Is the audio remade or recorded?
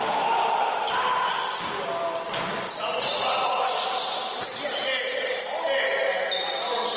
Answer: recorded